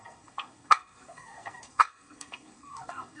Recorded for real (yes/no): no